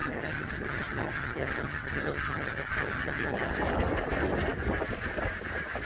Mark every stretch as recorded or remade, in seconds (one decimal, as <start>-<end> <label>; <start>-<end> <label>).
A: 0.0-3.5 remade; 3.5-5.8 recorded